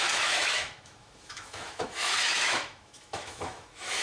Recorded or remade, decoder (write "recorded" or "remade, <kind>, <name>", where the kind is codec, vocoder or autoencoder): remade, autoencoder, DAC-VAE